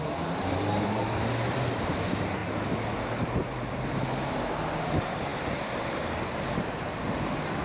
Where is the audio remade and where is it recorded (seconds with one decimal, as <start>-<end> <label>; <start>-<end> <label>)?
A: 0.0-2.4 remade; 2.4-3.5 recorded; 3.5-7.6 remade